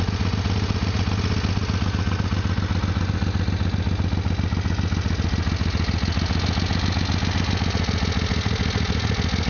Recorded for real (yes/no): yes